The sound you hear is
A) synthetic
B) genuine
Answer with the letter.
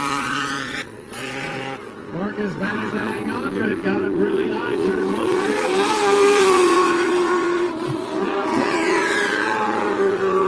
A